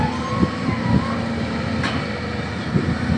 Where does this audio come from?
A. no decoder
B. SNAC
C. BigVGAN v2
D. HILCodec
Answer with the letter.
A